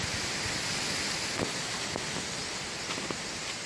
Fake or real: real